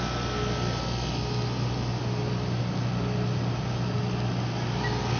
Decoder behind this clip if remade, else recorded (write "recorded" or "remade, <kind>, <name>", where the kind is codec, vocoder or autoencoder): recorded